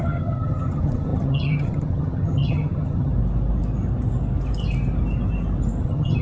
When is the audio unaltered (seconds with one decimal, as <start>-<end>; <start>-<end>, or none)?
3.1-5.8